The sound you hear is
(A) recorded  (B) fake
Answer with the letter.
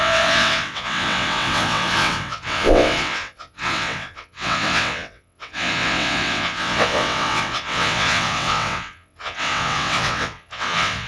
B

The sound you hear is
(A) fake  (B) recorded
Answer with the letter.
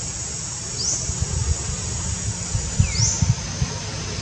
B